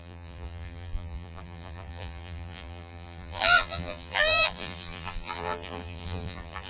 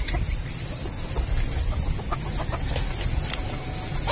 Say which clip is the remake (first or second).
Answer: first